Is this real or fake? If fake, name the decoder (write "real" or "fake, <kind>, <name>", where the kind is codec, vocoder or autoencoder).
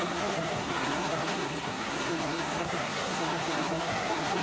fake, codec, SNAC